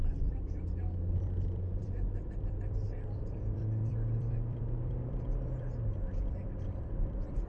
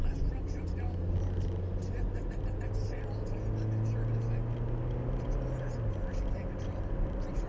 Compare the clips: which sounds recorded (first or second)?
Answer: second